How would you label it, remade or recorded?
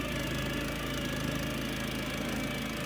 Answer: recorded